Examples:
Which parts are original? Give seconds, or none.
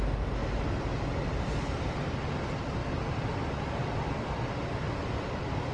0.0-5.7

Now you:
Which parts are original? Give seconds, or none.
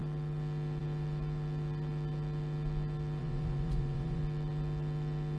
0.0-3.2; 4.2-5.4